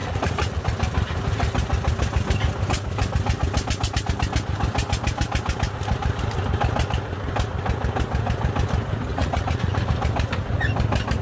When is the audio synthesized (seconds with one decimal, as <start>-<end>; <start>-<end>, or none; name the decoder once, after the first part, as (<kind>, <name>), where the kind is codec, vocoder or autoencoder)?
0.0-0.6 (vocoder, Vocos); 9.1-9.9

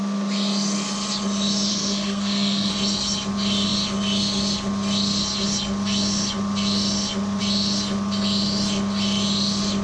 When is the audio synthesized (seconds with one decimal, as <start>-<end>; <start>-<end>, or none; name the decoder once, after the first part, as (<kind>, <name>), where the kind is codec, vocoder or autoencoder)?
1.7-2.7 (codec, SNAC)

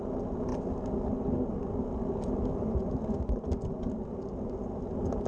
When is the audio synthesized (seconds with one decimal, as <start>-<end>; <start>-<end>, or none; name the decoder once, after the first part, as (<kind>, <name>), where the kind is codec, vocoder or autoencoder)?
none

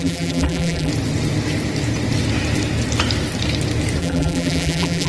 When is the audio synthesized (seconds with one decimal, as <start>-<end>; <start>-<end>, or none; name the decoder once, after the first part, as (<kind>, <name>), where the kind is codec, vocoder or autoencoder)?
0.0-0.9 (vocoder, BigVGAN v2); 4.0-5.1

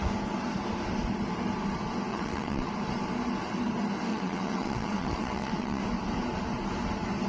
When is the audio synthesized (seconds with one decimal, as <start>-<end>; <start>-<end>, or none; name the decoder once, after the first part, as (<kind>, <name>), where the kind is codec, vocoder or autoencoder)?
2.1-2.7 (vocoder, WaveNeXt); 4.1-5.8

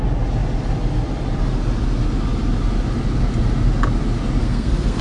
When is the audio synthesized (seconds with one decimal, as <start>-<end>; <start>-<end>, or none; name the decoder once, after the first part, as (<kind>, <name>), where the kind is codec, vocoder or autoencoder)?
4.4-5.0 (codec, SNAC)